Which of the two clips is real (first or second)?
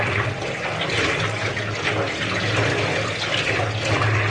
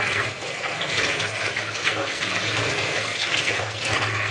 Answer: first